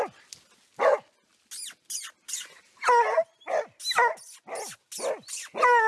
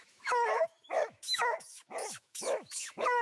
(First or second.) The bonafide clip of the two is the first